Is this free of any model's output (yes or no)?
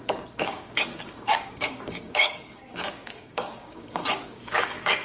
no